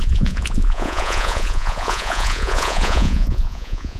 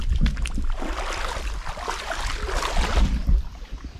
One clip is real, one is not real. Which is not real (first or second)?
first